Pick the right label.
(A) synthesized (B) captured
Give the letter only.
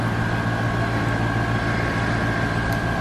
B